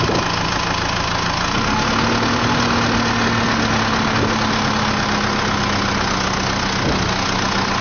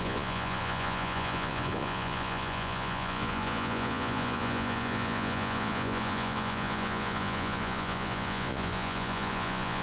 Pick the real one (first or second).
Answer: first